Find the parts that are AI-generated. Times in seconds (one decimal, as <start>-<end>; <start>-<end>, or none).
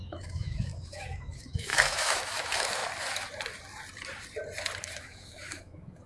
0.0-2.8; 4.8-6.1